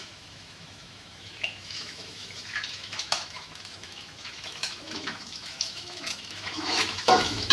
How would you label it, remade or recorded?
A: remade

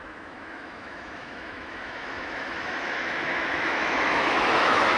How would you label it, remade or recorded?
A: remade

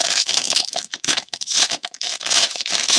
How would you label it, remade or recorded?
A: remade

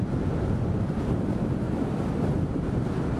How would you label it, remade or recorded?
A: recorded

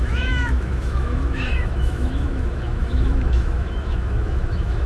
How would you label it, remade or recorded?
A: remade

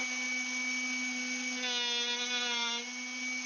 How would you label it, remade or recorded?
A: recorded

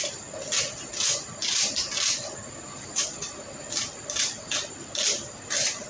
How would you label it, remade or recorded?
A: recorded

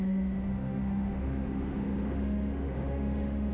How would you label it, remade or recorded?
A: remade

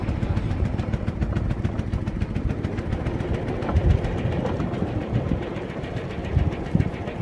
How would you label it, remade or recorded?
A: recorded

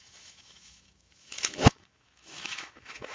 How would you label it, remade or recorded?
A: remade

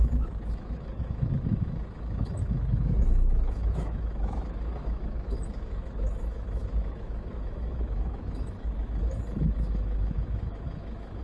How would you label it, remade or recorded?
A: remade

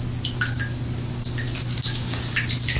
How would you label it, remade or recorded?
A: recorded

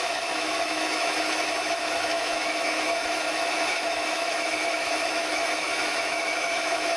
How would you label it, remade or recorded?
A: remade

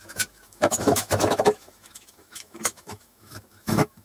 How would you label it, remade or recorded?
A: remade